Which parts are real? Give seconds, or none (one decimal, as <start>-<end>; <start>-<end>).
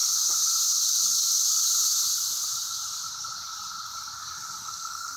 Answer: 0.0-4.6